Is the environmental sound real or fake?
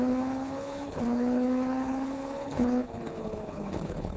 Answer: fake